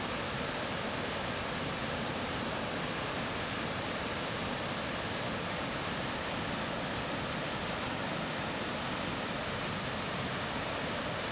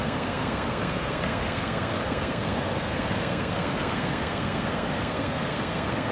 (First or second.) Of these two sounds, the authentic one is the first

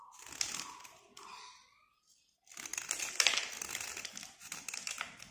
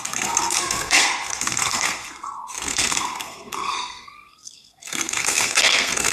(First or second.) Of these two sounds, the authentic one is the first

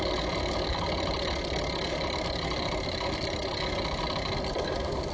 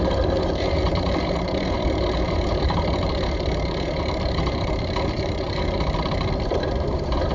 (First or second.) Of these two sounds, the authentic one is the first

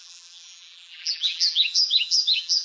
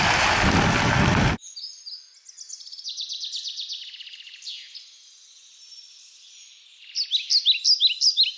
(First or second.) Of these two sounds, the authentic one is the second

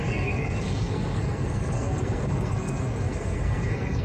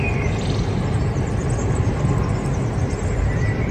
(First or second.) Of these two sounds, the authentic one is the second